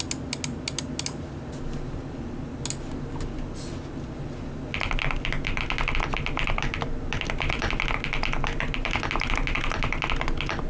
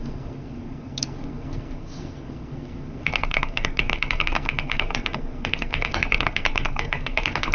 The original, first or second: first